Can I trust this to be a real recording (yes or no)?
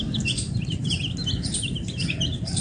no